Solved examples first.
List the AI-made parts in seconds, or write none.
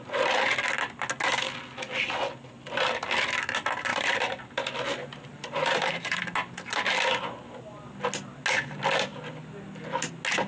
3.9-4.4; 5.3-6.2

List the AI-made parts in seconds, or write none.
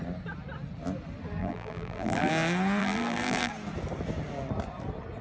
1.4-2.3; 2.8-3.5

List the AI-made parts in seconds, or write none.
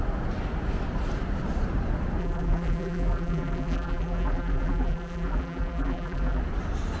2.2-6.4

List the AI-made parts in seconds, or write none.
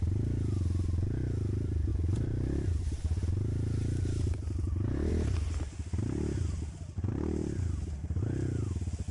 1.9-2.8; 7.4-8.2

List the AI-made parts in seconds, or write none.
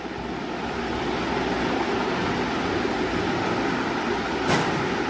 none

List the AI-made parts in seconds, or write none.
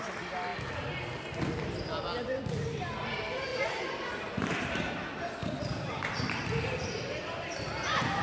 3.5-4.9; 5.4-7.6